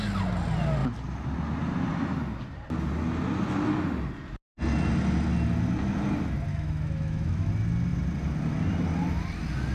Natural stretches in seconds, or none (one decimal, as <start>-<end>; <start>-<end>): 0.0-6.5; 7.5-9.7